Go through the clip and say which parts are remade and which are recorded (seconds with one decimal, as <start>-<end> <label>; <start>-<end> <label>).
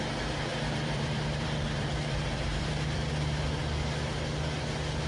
0.0-0.5 recorded; 0.5-3.1 remade; 3.1-5.1 recorded